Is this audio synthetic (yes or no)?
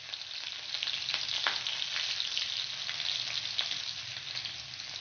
no